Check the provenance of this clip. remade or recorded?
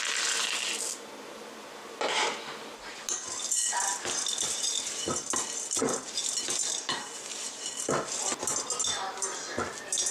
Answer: recorded